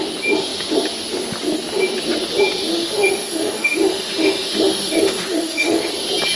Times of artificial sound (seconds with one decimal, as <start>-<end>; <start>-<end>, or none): 2.7-5.9